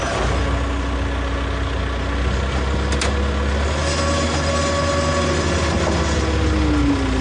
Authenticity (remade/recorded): recorded